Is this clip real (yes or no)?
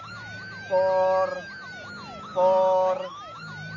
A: yes